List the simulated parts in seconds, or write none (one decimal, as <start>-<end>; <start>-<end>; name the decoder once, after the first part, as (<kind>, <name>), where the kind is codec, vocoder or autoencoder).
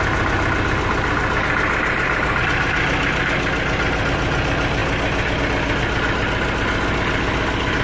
none